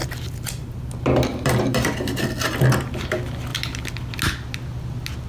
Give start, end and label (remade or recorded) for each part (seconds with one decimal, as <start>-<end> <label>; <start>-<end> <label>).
0.0-1.3 recorded; 1.3-1.8 remade; 1.8-5.3 recorded